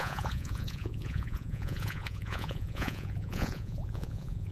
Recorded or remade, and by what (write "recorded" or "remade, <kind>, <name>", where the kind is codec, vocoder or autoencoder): remade, vocoder, Vocos